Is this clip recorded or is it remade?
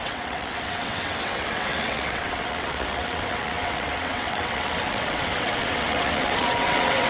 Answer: remade